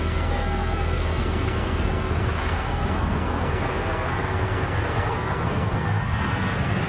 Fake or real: fake